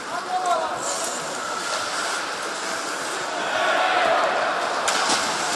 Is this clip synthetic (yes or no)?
no